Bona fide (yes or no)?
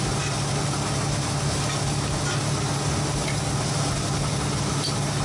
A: yes